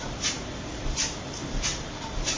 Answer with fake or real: real